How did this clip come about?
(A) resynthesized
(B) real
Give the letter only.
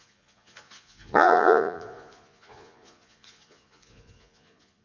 A